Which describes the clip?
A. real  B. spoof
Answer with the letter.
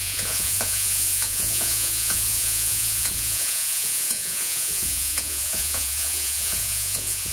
B